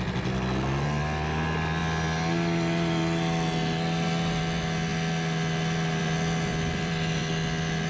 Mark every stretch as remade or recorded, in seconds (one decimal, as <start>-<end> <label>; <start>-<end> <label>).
0.0-6.5 recorded; 6.5-7.3 remade; 7.3-7.9 recorded